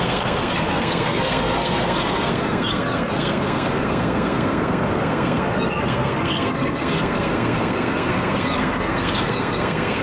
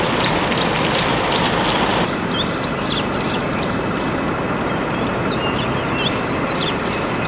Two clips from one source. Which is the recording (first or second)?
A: second